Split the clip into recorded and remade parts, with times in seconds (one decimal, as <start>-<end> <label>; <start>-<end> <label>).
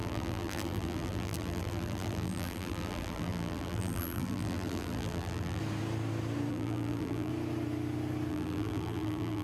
0.0-5.6 remade; 5.6-6.5 recorded; 6.5-7.3 remade; 7.3-8.3 recorded; 8.3-9.4 remade